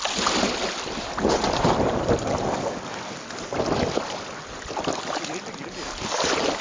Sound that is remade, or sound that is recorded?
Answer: recorded